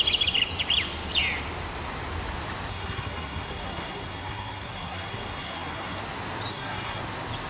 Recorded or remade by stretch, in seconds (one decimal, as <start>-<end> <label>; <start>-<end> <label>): 0.0-2.7 recorded; 2.7-6.0 remade; 6.0-6.5 recorded; 6.5-7.0 remade; 7.0-7.5 recorded